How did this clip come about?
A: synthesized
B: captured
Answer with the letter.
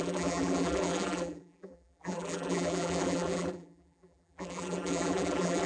A